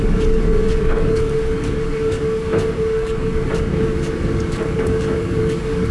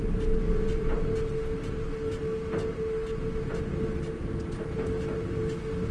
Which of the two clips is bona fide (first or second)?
second